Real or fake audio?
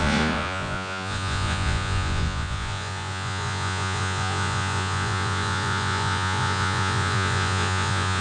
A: fake